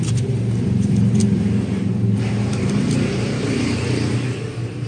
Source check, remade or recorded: remade